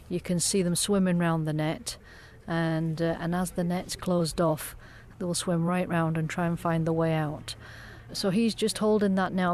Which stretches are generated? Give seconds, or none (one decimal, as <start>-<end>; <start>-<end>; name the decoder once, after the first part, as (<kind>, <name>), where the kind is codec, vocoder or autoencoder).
2.2-5.9 (vocoder, BigVGAN v2)